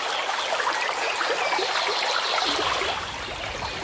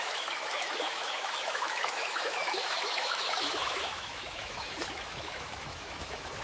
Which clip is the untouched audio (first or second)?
first